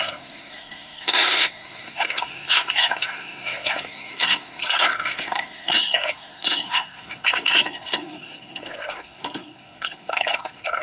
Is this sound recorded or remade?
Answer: remade